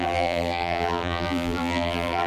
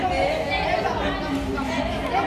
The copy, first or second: first